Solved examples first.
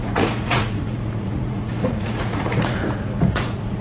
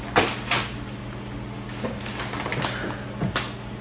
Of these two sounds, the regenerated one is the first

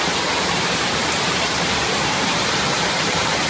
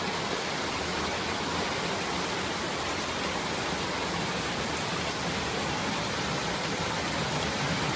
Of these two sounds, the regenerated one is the first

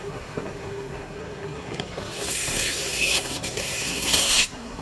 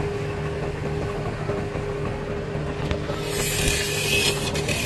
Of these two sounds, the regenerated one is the first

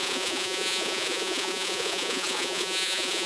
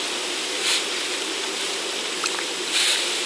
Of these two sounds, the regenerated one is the first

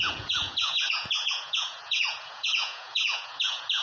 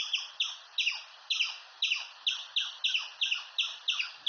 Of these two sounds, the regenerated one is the first